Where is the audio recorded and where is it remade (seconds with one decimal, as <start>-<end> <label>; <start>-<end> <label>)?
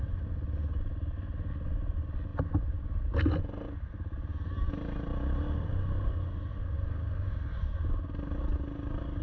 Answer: 0.0-9.2 recorded